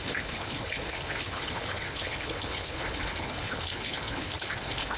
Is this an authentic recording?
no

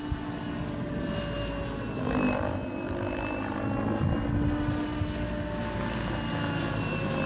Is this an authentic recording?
yes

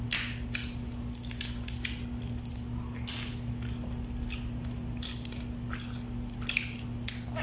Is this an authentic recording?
yes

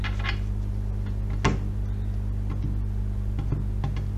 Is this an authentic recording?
yes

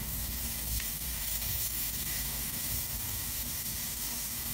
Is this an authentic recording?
no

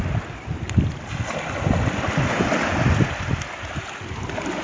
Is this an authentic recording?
yes